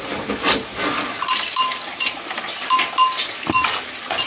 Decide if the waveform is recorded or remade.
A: recorded